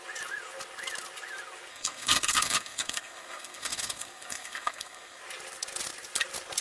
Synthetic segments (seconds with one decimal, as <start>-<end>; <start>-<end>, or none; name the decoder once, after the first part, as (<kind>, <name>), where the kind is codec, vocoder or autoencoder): 1.7-5.2 (codec, SNAC)